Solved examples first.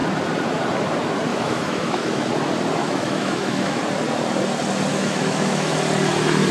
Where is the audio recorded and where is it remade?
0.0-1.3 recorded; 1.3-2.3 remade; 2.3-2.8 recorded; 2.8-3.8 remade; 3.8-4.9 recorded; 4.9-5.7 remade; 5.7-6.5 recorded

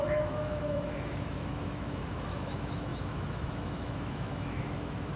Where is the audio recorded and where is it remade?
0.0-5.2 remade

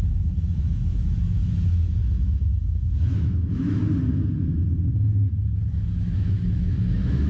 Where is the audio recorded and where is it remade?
0.0-3.8 remade; 3.8-5.7 recorded; 5.7-7.3 remade